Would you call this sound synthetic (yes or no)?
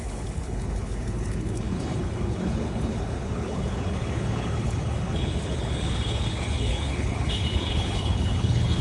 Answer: yes